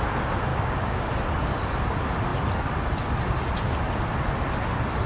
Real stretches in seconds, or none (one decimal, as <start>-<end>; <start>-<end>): 0.0-0.5; 1.1-5.1